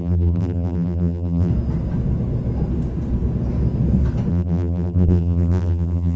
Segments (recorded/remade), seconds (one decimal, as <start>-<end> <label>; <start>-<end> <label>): 0.0-1.5 remade; 1.5-4.3 recorded; 4.3-6.2 remade